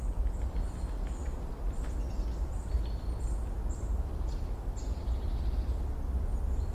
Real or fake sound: real